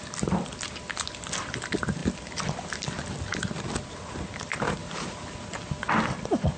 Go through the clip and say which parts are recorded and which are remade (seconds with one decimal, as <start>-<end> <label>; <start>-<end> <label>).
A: 0.0-6.6 recorded